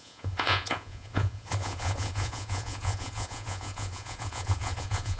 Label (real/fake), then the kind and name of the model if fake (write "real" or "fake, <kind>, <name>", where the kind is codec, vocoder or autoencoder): fake, vocoder, Vocos